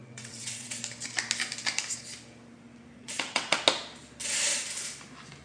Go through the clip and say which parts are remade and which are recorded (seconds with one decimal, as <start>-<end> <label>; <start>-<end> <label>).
0.0-0.8 remade; 0.8-3.0 recorded; 3.0-3.6 remade; 3.6-5.4 recorded